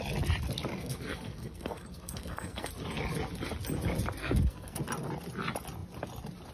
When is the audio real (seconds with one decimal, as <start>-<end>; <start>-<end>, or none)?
0.0-0.7; 2.7-4.2; 4.8-6.5